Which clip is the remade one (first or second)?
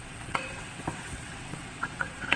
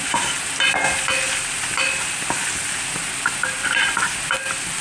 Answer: first